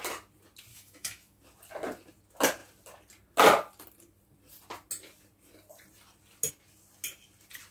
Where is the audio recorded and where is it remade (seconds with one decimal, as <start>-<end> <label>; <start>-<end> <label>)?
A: 0.0-0.7 recorded; 0.7-1.4 remade; 1.4-7.7 recorded